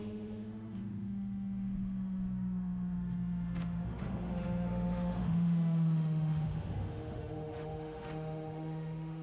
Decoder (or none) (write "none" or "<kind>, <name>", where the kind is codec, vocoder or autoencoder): autoencoder, DAC-VAE